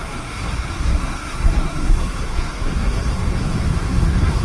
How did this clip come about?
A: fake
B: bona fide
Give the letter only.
A